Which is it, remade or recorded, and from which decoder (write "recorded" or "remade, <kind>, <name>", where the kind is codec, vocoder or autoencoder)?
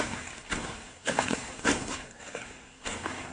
remade, codec, SNAC